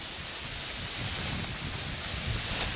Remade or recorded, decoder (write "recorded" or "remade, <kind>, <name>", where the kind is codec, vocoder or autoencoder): recorded